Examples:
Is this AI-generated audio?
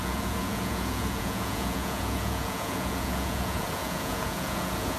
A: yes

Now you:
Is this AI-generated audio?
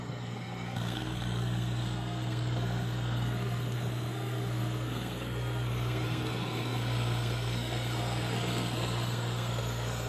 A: yes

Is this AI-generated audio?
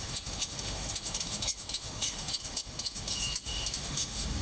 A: yes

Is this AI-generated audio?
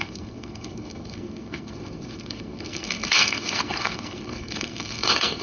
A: yes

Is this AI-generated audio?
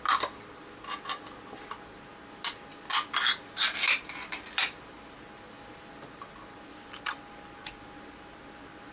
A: no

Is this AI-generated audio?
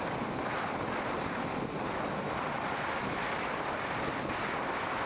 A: no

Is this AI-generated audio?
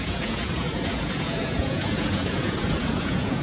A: yes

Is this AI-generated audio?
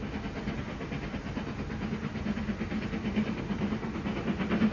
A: no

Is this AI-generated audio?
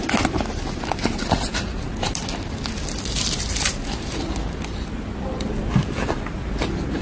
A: no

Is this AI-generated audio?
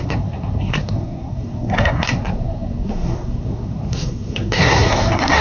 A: yes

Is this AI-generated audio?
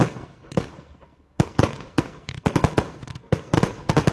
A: yes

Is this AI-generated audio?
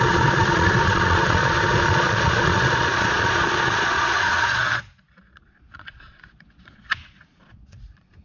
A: yes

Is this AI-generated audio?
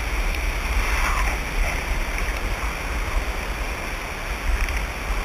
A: no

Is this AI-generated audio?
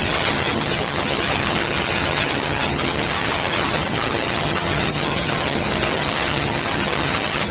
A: yes